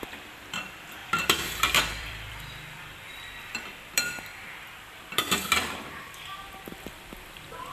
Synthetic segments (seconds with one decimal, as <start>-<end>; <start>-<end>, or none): 0.0-7.7